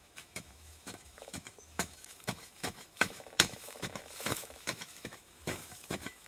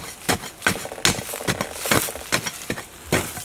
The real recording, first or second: second